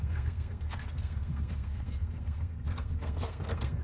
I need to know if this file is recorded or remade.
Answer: remade